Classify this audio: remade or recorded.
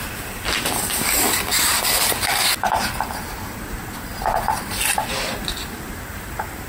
recorded